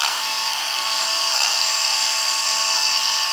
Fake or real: fake